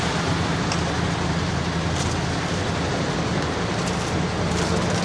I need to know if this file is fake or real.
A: real